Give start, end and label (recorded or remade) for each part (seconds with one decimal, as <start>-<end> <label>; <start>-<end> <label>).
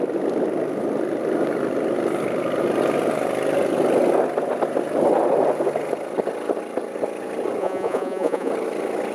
0.0-7.6 recorded; 7.6-8.5 remade; 8.5-9.1 recorded